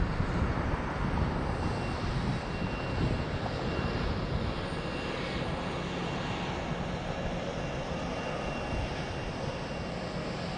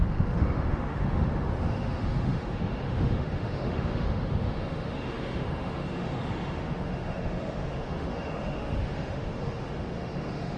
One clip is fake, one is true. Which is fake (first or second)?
second